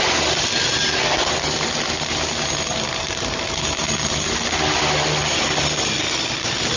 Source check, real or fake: real